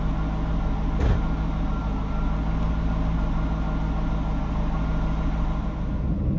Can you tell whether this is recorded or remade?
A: recorded